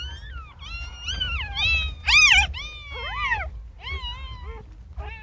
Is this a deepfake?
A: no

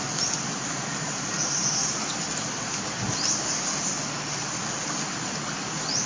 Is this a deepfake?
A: no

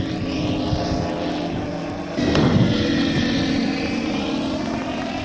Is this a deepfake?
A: no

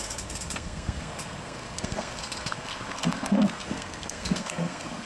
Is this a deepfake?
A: yes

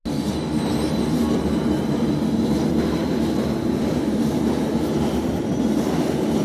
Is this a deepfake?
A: no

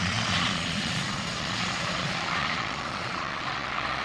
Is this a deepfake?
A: yes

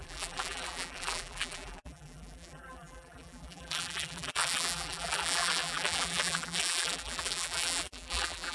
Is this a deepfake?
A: yes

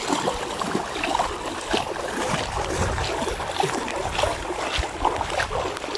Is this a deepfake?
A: no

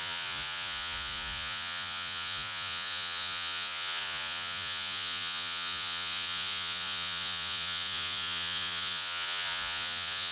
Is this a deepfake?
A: yes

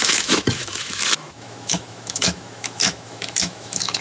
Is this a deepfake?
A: yes